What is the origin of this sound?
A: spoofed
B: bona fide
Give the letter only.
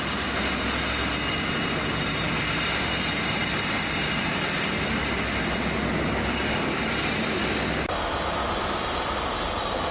B